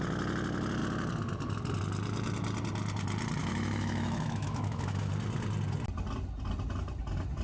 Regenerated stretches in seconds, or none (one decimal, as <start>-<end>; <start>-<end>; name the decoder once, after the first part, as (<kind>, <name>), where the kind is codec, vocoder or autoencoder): 3.4-5.1 (autoencoder, DAC-VAE)